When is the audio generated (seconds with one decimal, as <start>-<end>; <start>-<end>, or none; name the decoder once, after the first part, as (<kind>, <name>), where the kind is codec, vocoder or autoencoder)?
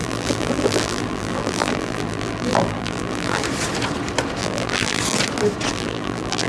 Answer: 0.0-3.4 (vocoder, BigVGAN v2); 4.4-5.0; 5.7-6.5